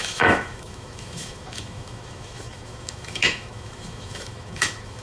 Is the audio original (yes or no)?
no